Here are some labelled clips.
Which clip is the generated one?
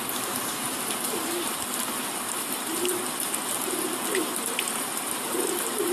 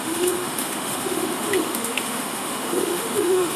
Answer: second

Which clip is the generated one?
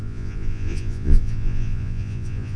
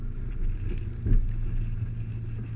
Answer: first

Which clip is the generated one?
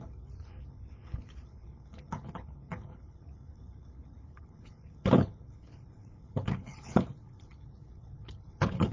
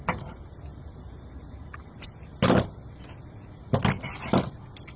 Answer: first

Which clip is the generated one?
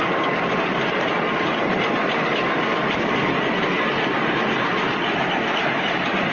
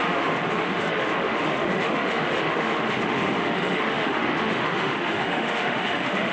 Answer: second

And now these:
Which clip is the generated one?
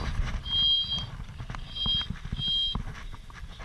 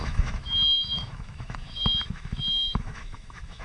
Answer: second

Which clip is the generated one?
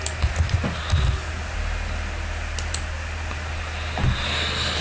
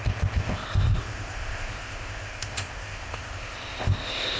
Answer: second